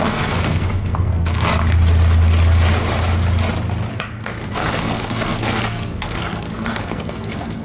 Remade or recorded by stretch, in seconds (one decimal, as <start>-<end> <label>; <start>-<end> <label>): 0.0-1.5 remade; 1.5-3.9 recorded; 3.9-7.6 remade